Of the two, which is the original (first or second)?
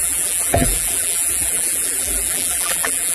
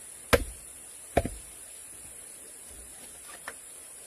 second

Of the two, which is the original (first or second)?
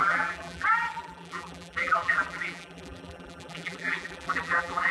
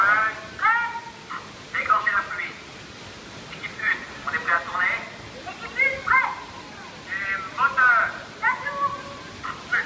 second